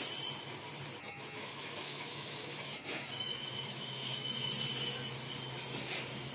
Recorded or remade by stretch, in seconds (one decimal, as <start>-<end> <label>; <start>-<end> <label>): 0.0-1.0 recorded; 1.0-4.5 remade; 4.5-6.3 recorded